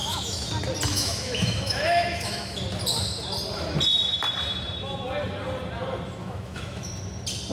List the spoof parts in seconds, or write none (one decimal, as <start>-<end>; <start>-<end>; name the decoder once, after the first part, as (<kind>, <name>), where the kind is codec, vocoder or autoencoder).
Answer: 0.0-0.5 (autoencoder, DAC-VAE); 0.9-2.6; 6.2-6.9